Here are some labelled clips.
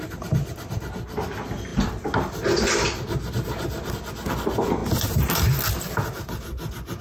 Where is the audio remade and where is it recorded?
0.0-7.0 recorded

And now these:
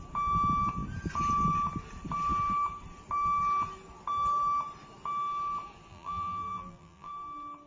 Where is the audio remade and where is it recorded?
0.0-5.9 recorded; 5.9-7.1 remade; 7.1-7.7 recorded